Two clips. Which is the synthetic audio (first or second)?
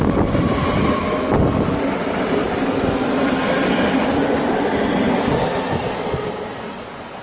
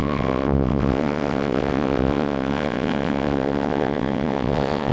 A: second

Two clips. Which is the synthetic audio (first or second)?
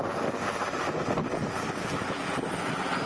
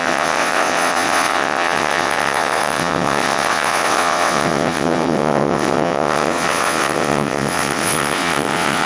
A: second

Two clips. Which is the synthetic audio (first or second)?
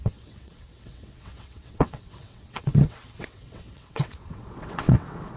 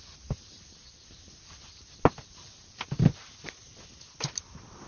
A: first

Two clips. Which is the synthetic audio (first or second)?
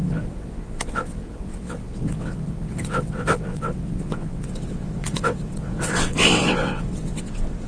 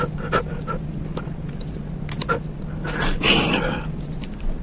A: first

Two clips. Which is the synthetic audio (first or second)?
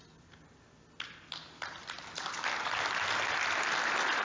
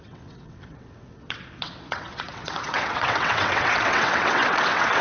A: second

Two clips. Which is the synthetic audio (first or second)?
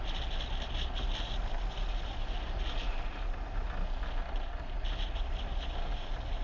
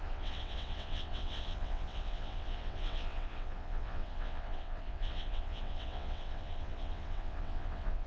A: second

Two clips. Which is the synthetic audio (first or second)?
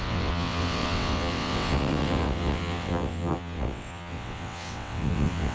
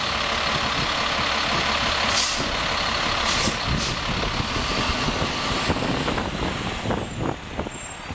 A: first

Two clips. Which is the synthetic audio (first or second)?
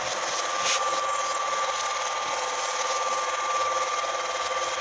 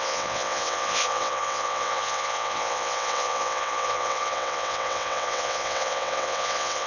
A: second